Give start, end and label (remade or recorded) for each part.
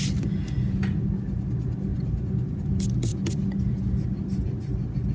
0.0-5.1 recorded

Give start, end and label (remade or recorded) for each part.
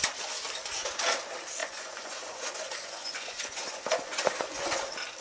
0.0-1.6 recorded; 1.6-4.7 remade; 4.7-5.2 recorded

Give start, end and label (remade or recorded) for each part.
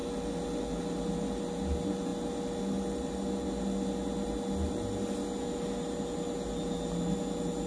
0.0-7.7 recorded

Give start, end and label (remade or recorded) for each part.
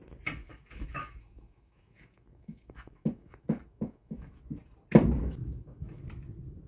0.0-0.4 recorded; 0.4-4.4 remade; 4.4-5.2 recorded; 5.2-6.0 remade; 6.0-6.7 recorded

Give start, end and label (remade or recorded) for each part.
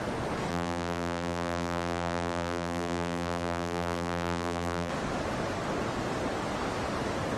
0.0-0.5 recorded; 0.5-4.9 remade; 4.9-7.4 recorded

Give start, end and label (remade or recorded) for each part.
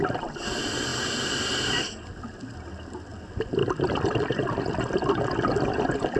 0.0-6.2 recorded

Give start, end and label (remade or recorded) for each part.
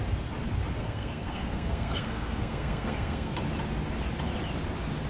0.0-0.8 recorded; 0.8-3.4 remade; 3.4-5.1 recorded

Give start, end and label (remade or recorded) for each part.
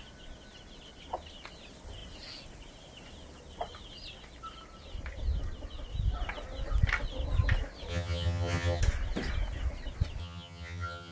0.0-7.9 recorded; 7.9-8.8 remade; 8.8-10.2 recorded; 10.2-11.1 remade